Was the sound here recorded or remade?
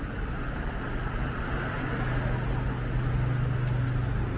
recorded